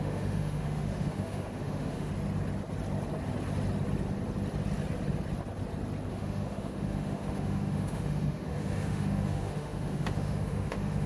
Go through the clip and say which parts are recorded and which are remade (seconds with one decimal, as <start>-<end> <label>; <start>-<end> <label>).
0.0-2.1 remade; 2.1-6.1 recorded; 6.1-11.1 remade